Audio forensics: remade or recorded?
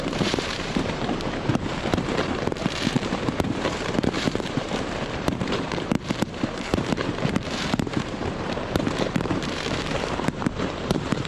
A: remade